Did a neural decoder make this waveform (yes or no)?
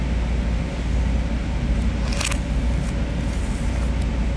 no